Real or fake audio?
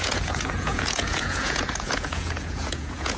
fake